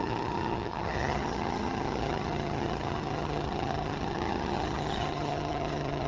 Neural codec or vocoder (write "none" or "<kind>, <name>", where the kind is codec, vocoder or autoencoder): vocoder, HiFi-GAN